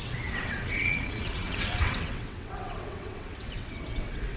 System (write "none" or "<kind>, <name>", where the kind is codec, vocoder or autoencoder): vocoder, WaveNeXt